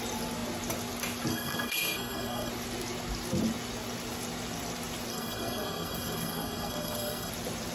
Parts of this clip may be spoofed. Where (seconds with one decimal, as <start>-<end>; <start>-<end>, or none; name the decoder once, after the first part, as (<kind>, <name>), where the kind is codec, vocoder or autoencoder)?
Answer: 1.3-2.5 (codec, SNAC); 5.1-7.3